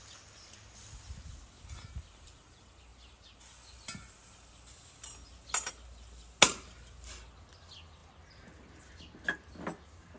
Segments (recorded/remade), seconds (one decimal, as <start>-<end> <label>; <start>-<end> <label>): 0.0-10.2 recorded